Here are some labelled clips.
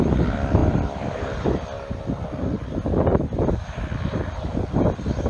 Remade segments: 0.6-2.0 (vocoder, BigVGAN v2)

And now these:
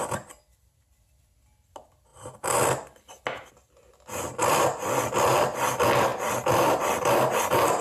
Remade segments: 0.0-0.9 (vocoder, BigVGAN v2); 6.1-6.8

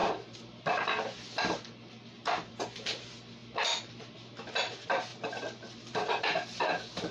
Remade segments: 3.4-3.9 (vocoder, BigVGAN v2); 5.1-6.6

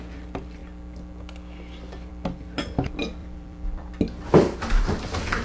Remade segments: 3.2-3.9 (vocoder, BigVGAN v2)

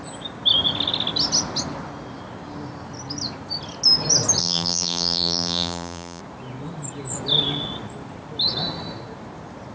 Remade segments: 4.4-6.2 (vocoder, BigVGAN v2)

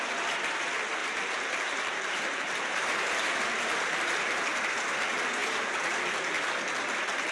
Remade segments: 1.0-4.4 (vocoder, BigVGAN v2); 5.4-6.2

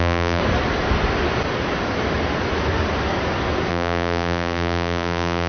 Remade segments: 0.0-0.4 (vocoder, BigVGAN v2); 3.7-5.5

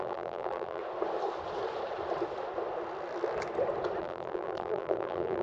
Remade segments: 0.0-0.8 (vocoder, BigVGAN v2); 4.0-5.4